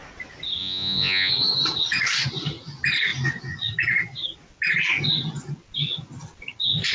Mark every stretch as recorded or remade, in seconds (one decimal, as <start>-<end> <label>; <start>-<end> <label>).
0.0-0.6 recorded; 0.6-1.3 remade; 1.3-6.9 recorded